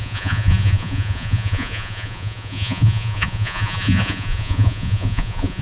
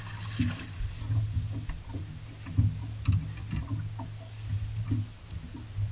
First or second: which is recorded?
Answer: second